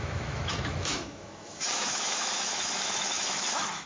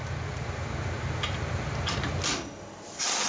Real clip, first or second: second